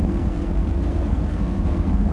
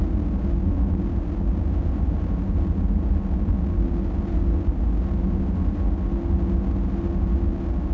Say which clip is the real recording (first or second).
second